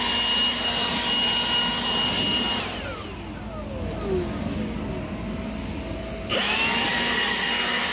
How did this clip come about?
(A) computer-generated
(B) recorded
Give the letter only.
B